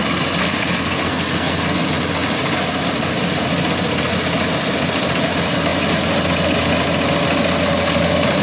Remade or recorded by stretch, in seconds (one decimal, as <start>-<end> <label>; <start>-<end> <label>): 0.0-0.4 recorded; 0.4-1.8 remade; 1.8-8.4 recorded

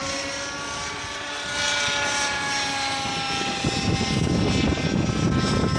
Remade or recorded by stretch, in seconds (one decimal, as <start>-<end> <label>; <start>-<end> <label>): 0.0-5.8 recorded

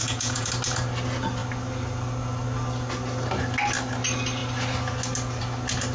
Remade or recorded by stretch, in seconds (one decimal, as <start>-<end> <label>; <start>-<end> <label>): 0.0-0.5 remade; 0.5-5.9 recorded

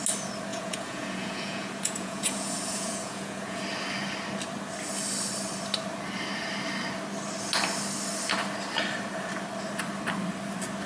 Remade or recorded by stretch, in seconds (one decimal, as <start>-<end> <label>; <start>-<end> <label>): 0.0-0.5 recorded; 0.5-3.6 remade; 3.6-10.9 recorded